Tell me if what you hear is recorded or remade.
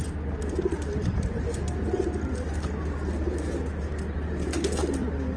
recorded